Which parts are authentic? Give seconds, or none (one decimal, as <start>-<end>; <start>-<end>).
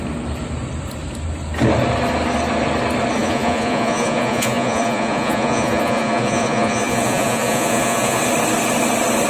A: 0.0-3.2; 8.2-9.3